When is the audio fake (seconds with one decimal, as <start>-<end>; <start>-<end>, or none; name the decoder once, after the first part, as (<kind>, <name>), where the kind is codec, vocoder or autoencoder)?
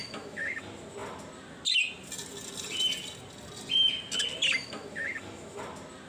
0.0-0.6 (autoencoder, DAC-VAE); 4.6-5.6